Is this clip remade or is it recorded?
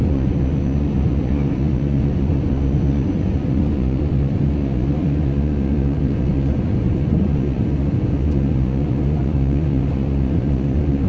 remade